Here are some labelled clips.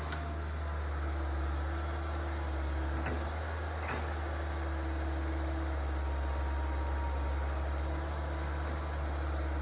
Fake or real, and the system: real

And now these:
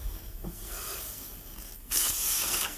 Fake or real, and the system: fake, codec, SNAC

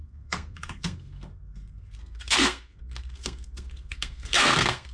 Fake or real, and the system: fake, codec, SNAC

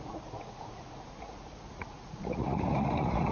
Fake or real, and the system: fake, vocoder, Vocos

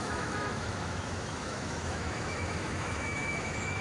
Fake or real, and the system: fake, autoencoder, DAC-VAE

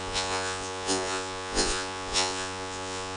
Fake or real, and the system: fake, vocoder, Vocos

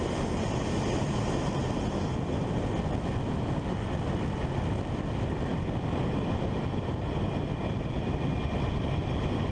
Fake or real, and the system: real